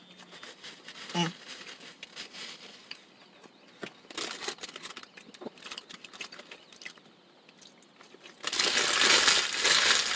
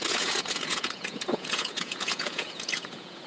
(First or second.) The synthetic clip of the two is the second